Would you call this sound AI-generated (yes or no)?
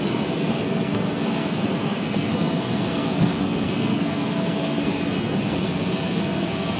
yes